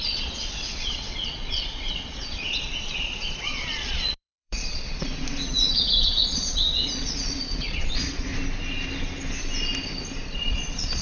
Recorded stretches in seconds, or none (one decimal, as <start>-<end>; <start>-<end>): 8.3-10.3